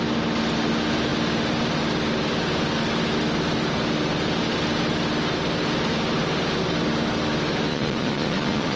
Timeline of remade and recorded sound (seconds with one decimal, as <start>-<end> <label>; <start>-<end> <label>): 0.0-7.7 recorded; 7.7-8.8 remade